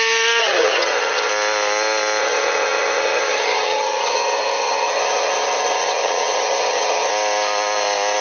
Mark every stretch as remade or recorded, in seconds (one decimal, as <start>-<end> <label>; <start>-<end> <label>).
0.0-0.4 recorded; 0.4-1.3 remade; 1.3-2.2 recorded; 2.2-7.1 remade; 7.1-8.2 recorded